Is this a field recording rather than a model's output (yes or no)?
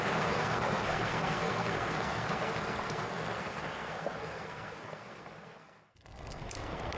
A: no